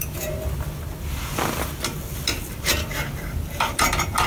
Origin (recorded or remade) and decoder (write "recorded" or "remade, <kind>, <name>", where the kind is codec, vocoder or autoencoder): recorded